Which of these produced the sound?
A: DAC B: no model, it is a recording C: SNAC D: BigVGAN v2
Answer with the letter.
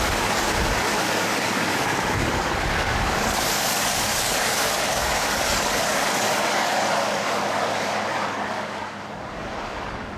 A